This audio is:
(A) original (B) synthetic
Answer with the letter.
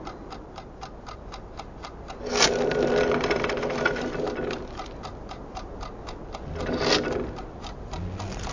A